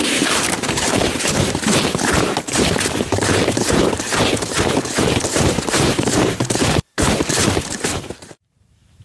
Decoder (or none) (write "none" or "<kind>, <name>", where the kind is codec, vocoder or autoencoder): vocoder, BigVGAN v2